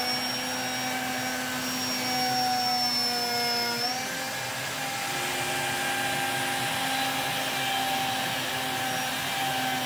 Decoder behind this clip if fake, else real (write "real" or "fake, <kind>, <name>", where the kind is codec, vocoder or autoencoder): real